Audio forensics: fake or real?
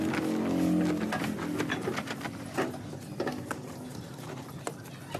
real